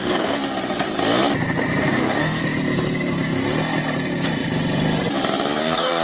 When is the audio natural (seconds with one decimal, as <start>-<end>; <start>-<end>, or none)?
0.4-1.8; 2.4-5.6